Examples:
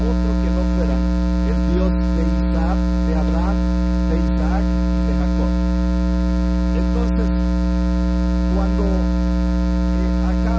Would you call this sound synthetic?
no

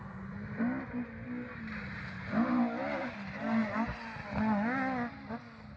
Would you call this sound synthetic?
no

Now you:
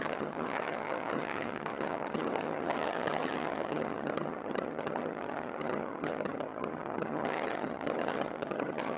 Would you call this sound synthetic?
yes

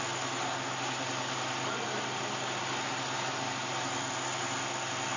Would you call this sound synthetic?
no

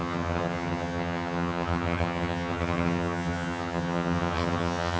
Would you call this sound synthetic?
yes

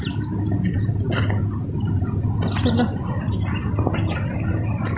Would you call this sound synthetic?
no